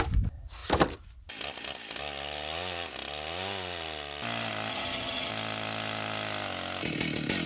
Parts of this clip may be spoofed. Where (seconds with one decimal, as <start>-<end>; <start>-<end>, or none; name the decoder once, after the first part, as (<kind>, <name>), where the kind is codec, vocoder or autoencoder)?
4.7-5.3 (vocoder, HiFi-GAN)